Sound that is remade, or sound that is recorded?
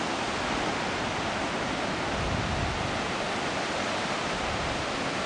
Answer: recorded